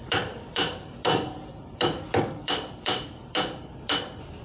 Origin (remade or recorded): remade